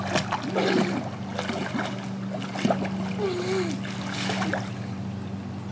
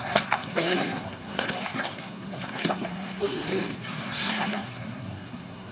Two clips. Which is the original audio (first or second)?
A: first